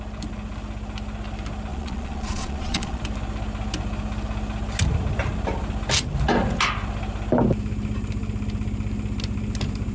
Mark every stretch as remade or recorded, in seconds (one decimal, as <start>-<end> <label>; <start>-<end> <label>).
0.0-1.7 recorded; 1.7-3.0 remade; 3.0-9.9 recorded